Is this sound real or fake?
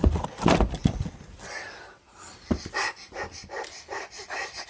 real